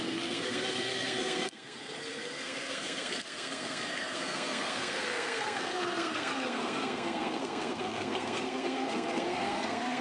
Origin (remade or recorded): remade